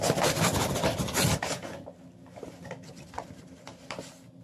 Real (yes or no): yes